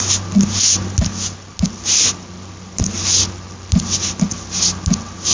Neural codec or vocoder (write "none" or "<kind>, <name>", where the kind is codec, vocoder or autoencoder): none